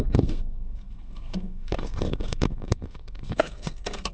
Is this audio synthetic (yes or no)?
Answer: yes